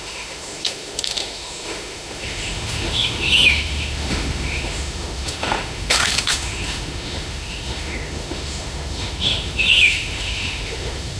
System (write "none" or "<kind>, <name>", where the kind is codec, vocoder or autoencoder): autoencoder, DAC-VAE